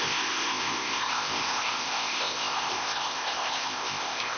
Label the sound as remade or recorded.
remade